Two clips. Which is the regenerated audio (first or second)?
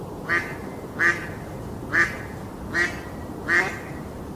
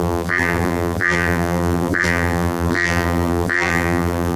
second